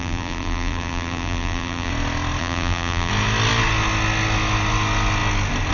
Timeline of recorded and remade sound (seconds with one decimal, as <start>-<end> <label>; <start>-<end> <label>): 0.0-1.9 remade; 1.9-2.4 recorded; 2.4-3.1 remade; 3.1-5.7 recorded